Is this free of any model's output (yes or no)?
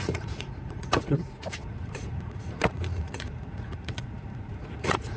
no